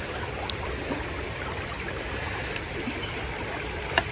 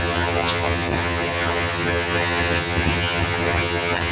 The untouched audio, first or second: first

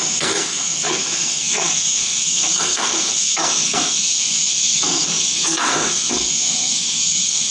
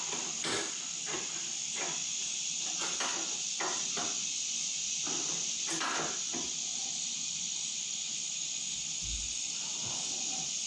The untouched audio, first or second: second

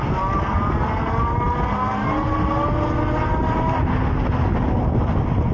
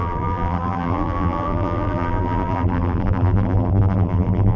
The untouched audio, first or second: first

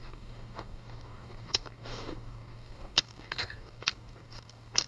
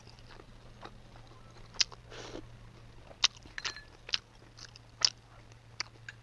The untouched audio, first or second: second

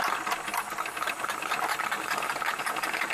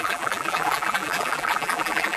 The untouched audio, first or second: first